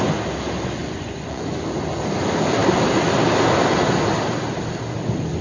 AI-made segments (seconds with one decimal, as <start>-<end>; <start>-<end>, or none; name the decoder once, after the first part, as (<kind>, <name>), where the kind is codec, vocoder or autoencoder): 0.8-1.6 (vocoder, Vocos)